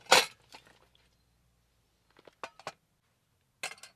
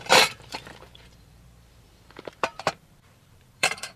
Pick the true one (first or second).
first